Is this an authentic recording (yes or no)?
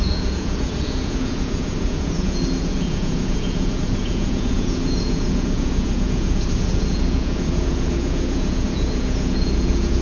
no